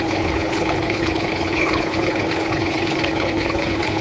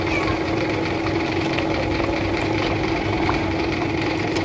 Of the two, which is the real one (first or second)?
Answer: second